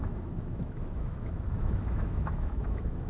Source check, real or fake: fake